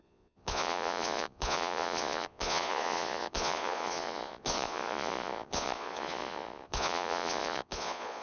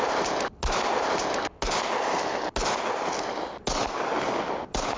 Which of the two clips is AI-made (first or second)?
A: first